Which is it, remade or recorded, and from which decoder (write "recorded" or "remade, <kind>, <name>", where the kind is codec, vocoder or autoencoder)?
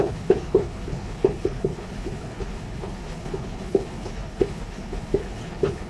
remade, codec, HILCodec